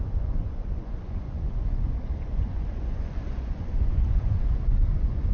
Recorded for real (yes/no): no